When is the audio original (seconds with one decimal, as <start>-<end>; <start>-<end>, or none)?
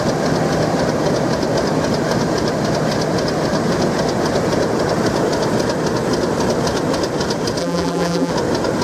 0.0-7.6; 8.3-8.8